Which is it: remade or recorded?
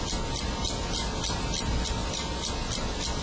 recorded